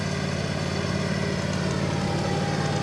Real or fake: real